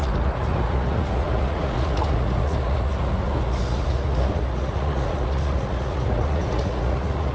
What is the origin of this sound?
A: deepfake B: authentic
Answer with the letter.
A